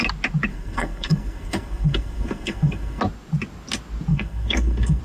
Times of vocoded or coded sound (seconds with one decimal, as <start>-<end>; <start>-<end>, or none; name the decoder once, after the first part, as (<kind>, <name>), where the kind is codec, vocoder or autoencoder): 0.5-3.0 (codec, SNAC); 4.1-5.0